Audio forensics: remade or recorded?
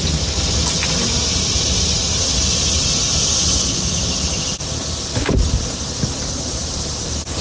recorded